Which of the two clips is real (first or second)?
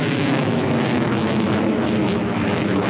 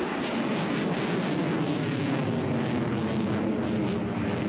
second